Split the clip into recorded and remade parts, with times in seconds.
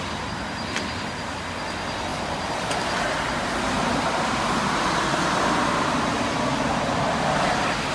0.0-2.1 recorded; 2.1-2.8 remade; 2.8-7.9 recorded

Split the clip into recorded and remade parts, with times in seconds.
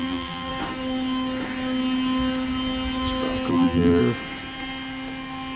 0.0-0.5 remade; 0.5-3.5 recorded; 3.5-4.0 remade; 4.0-5.6 recorded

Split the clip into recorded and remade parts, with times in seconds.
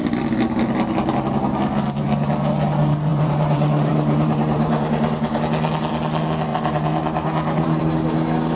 0.0-3.1 recorded; 3.1-5.4 remade; 5.4-6.5 recorded; 6.5-7.8 remade; 7.8-8.6 recorded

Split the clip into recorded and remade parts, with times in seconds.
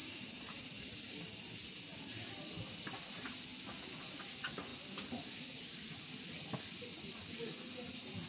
0.0-0.6 remade; 0.6-8.3 recorded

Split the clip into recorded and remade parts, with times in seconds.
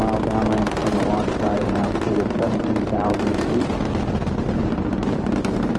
0.0-0.8 recorded; 0.8-3.6 remade; 3.6-5.8 recorded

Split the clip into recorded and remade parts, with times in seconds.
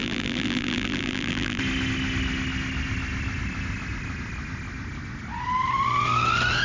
0.0-1.6 remade; 1.6-6.6 recorded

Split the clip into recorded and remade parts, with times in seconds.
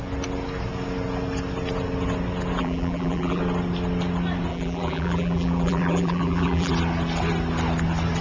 0.0-2.6 recorded; 2.6-3.4 remade; 3.4-4.5 recorded; 4.5-6.7 remade; 6.7-8.2 recorded